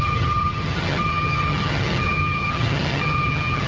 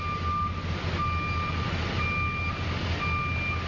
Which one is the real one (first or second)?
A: second